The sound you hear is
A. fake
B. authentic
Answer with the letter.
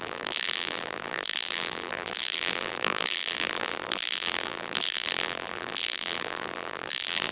A